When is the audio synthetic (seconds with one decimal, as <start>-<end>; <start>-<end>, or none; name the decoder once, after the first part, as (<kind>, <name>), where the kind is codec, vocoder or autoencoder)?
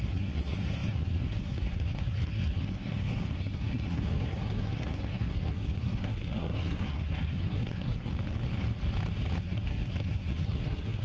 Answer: 0.0-8.1 (codec, SNAC); 9.4-11.0